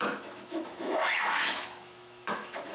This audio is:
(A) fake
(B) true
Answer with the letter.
A